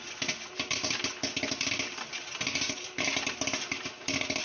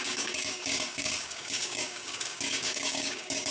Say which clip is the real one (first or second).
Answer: first